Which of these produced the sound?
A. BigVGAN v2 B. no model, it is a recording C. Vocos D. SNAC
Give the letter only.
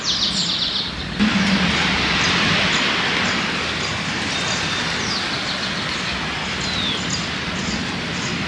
B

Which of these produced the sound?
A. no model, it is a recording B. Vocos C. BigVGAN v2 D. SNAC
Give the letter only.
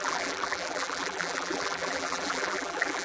C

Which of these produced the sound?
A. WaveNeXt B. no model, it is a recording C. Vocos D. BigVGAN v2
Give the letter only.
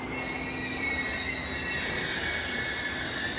B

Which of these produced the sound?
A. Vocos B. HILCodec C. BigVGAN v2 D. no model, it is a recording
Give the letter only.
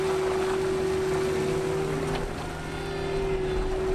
D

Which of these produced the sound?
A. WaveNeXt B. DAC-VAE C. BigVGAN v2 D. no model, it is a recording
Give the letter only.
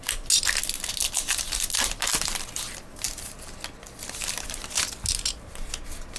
D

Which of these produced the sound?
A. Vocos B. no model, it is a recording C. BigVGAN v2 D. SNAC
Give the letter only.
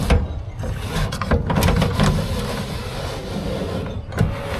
B